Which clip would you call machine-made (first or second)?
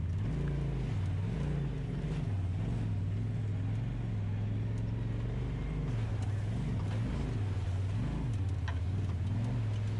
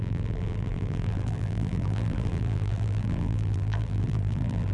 second